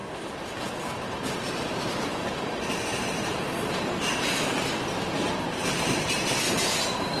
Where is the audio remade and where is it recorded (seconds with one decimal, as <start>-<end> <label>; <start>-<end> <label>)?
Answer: 0.0-7.2 remade